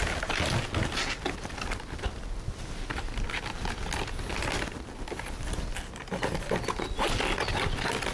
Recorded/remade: recorded